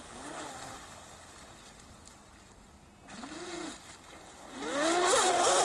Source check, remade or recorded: recorded